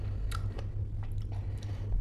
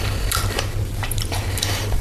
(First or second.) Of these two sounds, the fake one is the second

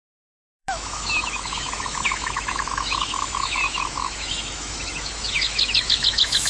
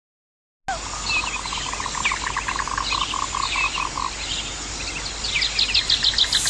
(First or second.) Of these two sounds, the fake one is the first